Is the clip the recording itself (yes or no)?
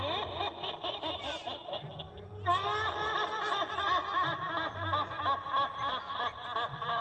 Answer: yes